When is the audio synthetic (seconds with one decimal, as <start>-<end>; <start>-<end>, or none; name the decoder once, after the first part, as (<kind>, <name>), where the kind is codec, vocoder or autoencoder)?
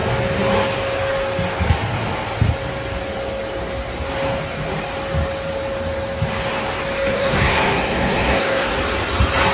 7.1-8.8 (codec, SNAC)